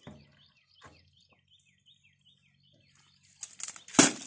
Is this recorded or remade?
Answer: recorded